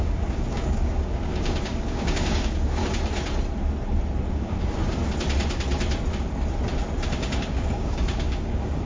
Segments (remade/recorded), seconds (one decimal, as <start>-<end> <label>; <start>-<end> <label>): 0.0-2.8 remade; 2.8-4.3 recorded; 4.3-5.0 remade; 5.0-7.4 recorded; 7.4-8.9 remade